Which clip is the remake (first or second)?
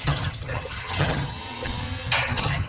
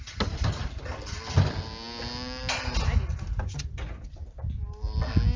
first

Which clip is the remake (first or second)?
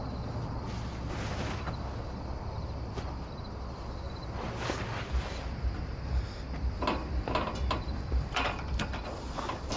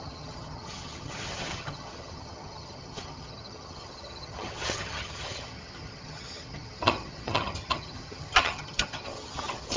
second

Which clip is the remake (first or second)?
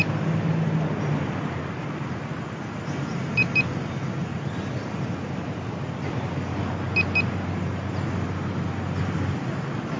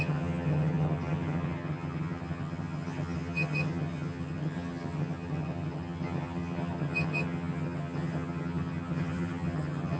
second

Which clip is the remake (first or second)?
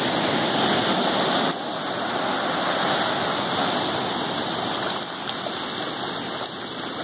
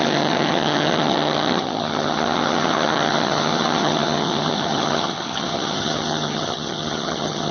second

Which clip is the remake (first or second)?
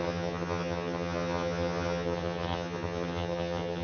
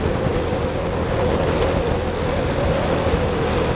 first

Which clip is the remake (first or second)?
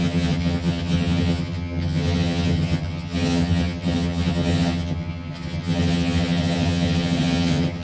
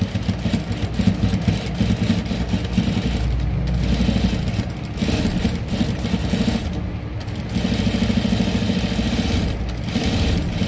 first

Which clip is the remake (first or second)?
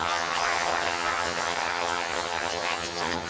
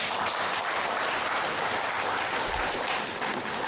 first